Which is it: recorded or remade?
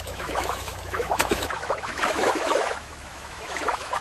remade